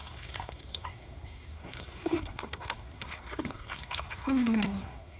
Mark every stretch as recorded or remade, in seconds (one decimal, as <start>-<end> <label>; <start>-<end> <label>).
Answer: 0.0-5.2 remade